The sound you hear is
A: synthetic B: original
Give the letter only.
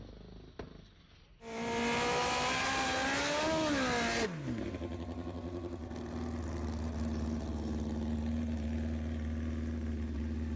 B